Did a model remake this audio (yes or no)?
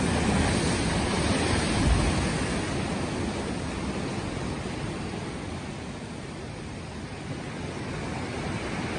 no